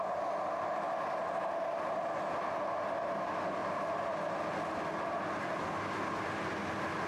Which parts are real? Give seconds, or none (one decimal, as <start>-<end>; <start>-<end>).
0.0-7.1